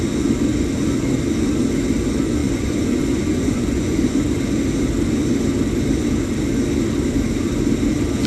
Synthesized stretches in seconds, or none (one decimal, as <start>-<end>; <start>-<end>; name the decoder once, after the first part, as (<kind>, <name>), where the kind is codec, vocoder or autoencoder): 2.4-4.2 (vocoder, Vocos)